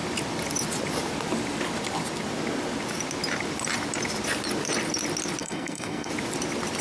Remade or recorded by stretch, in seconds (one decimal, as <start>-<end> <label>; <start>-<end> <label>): 0.0-5.4 recorded; 5.4-6.1 remade; 6.1-6.8 recorded